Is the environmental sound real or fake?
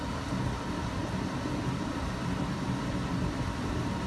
real